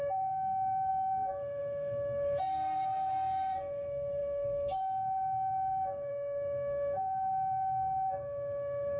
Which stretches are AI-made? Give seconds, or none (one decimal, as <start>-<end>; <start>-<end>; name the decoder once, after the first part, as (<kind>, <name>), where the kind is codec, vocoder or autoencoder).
0.0-9.0 (codec, SNAC)